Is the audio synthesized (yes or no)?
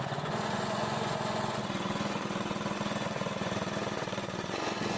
yes